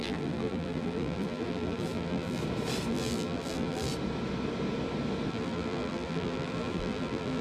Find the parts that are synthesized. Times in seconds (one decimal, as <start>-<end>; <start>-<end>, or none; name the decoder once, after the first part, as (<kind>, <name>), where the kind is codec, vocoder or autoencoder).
0.0-2.4 (vocoder, BigVGAN v2); 2.9-3.9; 5.3-7.4